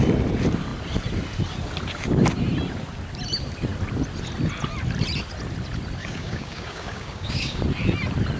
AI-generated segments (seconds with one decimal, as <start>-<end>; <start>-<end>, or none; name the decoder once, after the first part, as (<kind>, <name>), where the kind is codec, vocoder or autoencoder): 6.0-7.6 (codec, DAC)